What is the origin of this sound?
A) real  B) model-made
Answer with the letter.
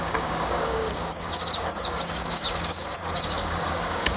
B